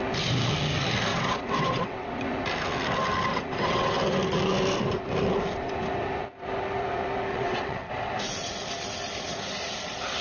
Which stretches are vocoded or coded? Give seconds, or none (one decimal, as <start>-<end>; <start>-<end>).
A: 1.1-2.1; 3.3-4.0; 7.3-7.9